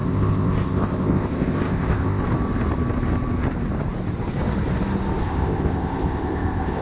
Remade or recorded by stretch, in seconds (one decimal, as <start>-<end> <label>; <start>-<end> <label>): 0.0-2.2 remade; 2.2-5.2 recorded; 5.2-6.8 remade